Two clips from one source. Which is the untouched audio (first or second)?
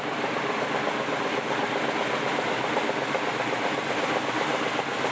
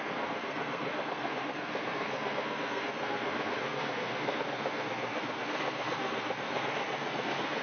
first